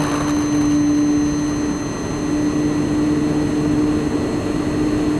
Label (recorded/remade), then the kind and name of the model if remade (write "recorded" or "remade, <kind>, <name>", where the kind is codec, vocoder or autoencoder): recorded